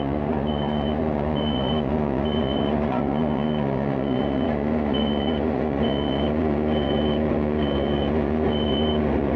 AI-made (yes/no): yes